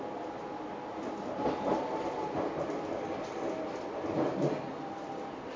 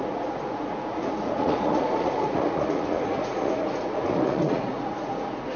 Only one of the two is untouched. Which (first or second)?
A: first